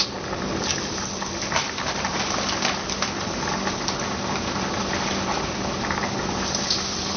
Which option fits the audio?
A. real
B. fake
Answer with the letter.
A